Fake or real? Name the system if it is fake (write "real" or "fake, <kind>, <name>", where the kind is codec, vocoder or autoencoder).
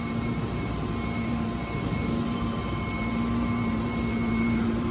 fake, vocoder, BigVGAN v2